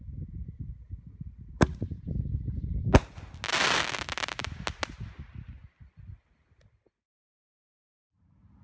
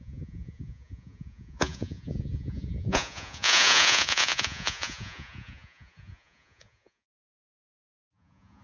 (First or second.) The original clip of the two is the first